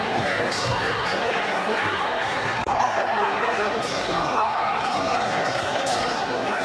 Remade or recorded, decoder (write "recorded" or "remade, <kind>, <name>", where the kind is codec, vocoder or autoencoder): remade, codec, SNAC